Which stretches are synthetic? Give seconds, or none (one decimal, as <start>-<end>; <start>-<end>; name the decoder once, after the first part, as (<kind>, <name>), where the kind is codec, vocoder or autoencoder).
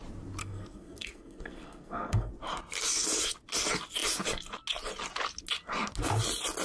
0.4-2.3 (codec, SNAC)